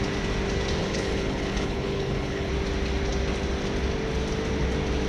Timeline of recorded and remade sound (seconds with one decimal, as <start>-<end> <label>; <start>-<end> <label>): 0.0-0.8 recorded; 0.8-2.5 remade; 2.5-5.1 recorded